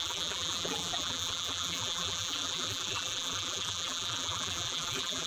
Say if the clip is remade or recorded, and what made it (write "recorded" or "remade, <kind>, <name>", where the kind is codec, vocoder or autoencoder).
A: remade, vocoder, BigVGAN v2